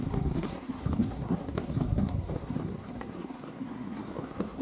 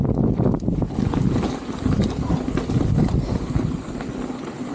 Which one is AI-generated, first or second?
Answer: first